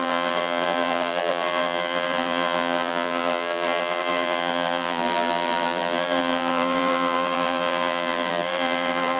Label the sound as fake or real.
fake